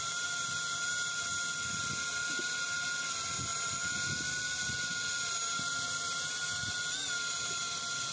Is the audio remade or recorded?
recorded